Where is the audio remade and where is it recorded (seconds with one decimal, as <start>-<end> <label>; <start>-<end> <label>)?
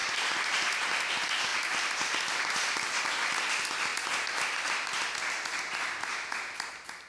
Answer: 0.0-0.9 remade; 0.9-1.5 recorded; 1.5-3.0 remade; 3.0-3.9 recorded; 3.9-5.1 remade; 5.1-7.1 recorded